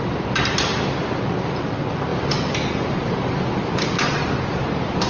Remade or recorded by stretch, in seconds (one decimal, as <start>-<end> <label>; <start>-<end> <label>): 0.0-5.1 recorded